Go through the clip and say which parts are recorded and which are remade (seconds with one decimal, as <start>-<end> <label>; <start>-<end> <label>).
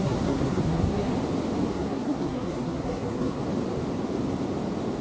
0.0-1.1 remade; 1.1-1.7 recorded; 1.7-3.4 remade; 3.4-5.0 recorded